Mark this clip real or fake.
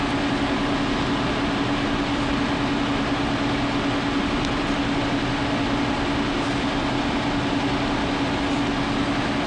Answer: real